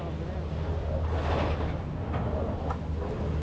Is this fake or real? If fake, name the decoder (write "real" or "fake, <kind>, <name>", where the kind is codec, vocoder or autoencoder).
real